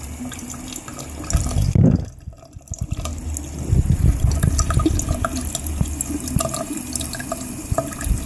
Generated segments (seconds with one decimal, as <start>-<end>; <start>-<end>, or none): none